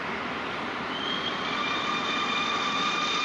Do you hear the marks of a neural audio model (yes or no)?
no